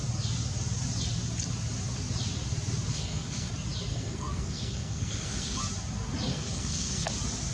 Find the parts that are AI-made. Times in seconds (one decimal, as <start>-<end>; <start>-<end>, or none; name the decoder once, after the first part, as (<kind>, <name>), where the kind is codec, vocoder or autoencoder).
2.9-3.5 (codec, SNAC); 3.9-5.6; 6.3-7.1